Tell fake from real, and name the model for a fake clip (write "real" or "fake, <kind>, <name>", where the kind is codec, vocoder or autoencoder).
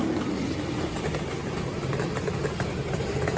real